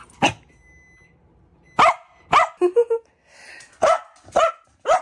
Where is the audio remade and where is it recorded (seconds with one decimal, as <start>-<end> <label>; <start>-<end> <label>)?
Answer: 0.0-5.0 recorded